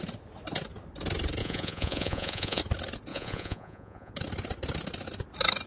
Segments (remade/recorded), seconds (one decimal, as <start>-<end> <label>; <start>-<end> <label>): 0.0-1.4 recorded; 1.4-2.6 remade; 2.6-3.1 recorded; 3.1-4.1 remade; 4.1-5.7 recorded